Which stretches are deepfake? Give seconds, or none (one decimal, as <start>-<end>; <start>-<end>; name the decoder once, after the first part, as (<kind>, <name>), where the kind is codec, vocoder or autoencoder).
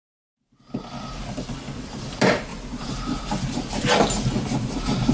none